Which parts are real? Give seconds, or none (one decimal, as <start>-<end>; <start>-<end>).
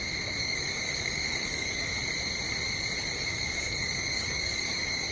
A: 0.0-0.4; 2.0-3.3